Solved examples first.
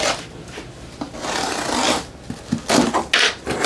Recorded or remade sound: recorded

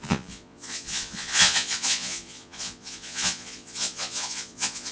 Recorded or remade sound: remade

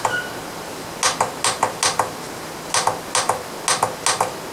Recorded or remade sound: recorded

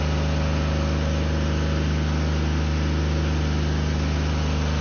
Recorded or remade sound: recorded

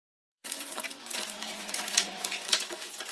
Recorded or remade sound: remade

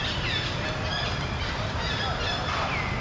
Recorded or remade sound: recorded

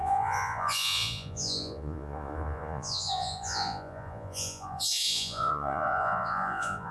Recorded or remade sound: remade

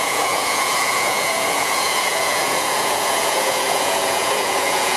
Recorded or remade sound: remade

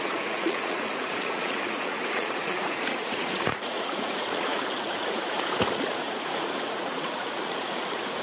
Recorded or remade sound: remade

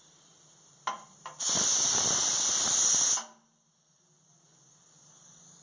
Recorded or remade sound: recorded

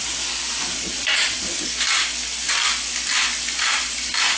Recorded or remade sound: recorded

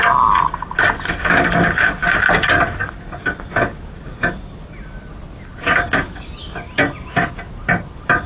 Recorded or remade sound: recorded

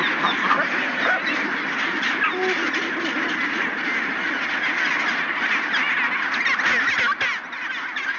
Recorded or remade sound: recorded